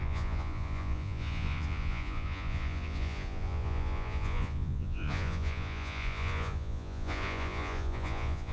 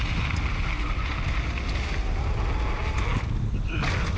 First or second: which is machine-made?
first